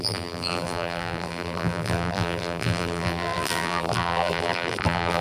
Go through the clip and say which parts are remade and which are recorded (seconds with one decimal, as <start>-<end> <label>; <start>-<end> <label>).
0.0-5.2 remade